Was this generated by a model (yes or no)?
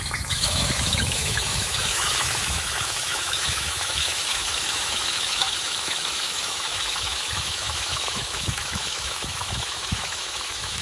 yes